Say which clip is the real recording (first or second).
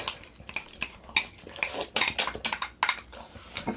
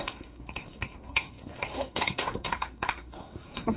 first